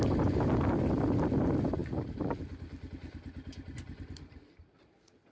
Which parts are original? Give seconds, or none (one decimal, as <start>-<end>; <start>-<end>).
0.0-5.3